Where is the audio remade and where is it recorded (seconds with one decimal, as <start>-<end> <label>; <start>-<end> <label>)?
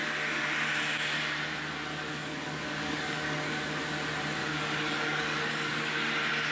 0.0-2.1 recorded; 2.1-3.8 remade; 3.8-4.4 recorded; 4.4-5.9 remade; 5.9-6.5 recorded